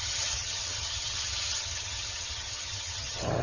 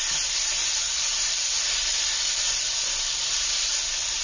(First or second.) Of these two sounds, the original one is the second